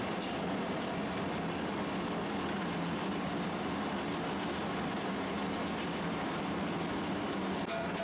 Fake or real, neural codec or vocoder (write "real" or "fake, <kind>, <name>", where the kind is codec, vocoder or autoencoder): real